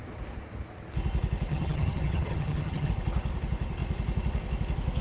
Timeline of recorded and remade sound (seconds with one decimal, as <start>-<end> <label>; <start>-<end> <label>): 0.0-1.5 recorded; 1.5-2.9 remade; 2.9-5.0 recorded